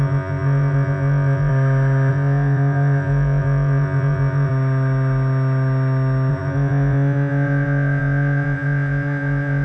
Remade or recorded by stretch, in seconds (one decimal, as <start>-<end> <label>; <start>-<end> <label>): 0.0-1.5 remade; 1.5-2.1 recorded; 2.1-4.5 remade; 4.5-6.3 recorded; 6.3-9.6 remade